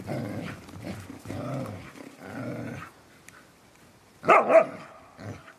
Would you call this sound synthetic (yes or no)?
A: no